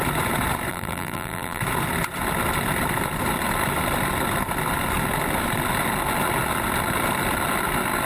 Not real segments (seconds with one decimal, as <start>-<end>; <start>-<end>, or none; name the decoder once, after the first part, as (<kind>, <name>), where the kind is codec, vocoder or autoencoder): 0.7-1.6 (vocoder, BigVGAN v2)